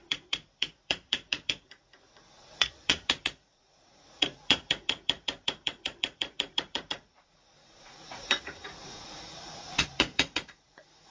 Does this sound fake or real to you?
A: fake